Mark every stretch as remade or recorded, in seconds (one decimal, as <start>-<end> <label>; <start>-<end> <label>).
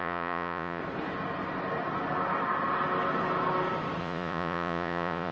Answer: 0.0-0.8 remade; 0.8-4.0 recorded; 4.0-5.3 remade